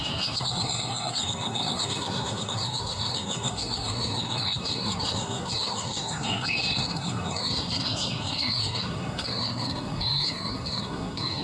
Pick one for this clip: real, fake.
fake